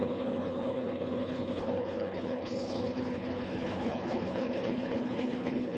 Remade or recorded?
remade